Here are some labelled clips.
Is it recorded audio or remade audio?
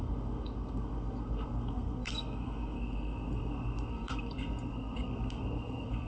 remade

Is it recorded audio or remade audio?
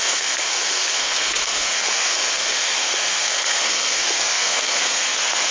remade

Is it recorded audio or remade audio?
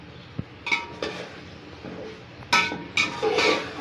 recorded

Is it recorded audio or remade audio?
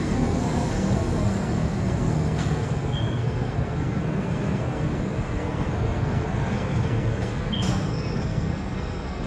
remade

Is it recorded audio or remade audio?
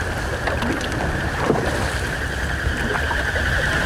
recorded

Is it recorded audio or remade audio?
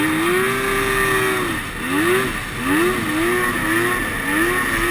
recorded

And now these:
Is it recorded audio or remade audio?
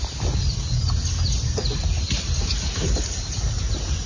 recorded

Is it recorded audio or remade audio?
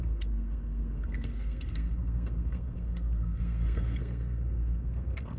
remade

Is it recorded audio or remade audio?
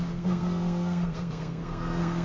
remade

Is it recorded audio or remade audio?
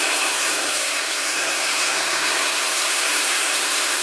remade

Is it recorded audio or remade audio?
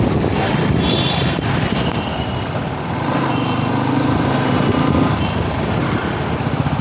recorded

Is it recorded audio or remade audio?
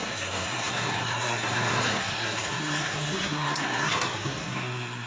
remade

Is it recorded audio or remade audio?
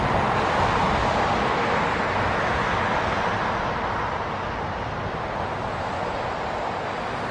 recorded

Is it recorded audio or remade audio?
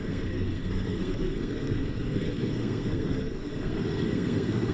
remade